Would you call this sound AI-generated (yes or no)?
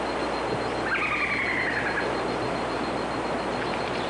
no